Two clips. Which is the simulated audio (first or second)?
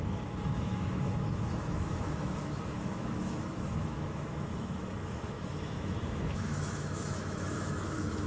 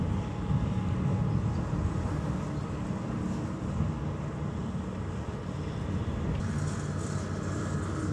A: first